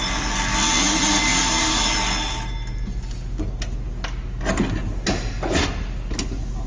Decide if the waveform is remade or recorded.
recorded